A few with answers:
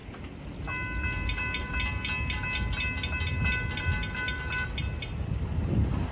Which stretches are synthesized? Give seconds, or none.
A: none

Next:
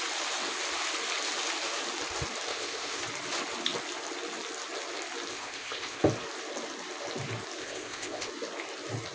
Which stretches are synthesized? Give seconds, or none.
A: 2.5-3.0 (codec, ZipCodec); 5.3-6.0; 7.6-8.3

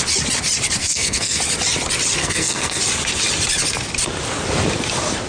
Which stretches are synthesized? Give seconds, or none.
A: 0.8-1.4 (codec, SNAC); 2.2-2.8